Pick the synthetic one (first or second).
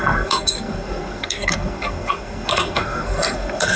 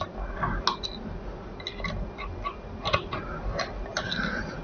first